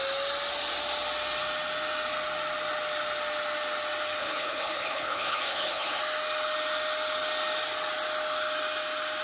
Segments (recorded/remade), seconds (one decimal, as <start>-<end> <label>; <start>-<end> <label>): 0.0-4.2 recorded; 4.2-6.0 remade; 6.0-9.2 recorded